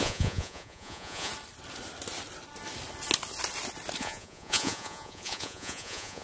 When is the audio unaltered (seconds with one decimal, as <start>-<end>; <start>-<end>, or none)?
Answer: 1.3-4.0